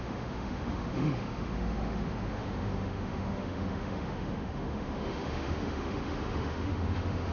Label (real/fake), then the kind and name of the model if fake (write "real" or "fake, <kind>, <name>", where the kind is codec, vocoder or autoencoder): fake, autoencoder, DAC-VAE